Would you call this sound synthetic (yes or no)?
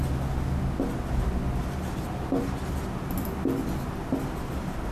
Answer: no